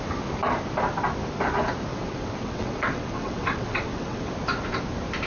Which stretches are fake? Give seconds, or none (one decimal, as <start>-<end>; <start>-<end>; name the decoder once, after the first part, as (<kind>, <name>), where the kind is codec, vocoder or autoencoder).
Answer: 1.9-4.3 (vocoder, WaveNeXt)